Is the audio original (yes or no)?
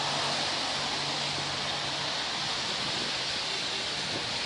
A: yes